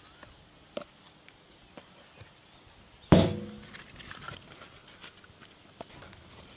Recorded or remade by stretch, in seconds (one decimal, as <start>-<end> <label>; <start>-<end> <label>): 0.0-6.6 recorded